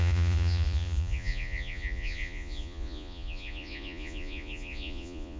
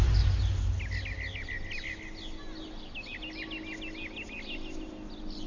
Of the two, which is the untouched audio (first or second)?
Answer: second